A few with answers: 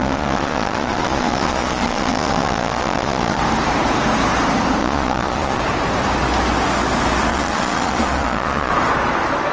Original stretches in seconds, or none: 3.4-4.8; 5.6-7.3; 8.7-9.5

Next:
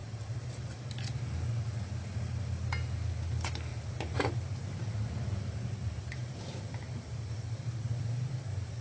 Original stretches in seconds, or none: 0.0-3.7; 7.8-8.8

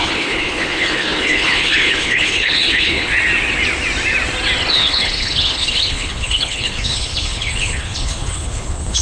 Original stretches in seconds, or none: 3.1-4.7

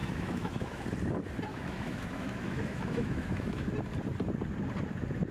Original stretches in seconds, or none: 0.8-1.5; 3.7-5.3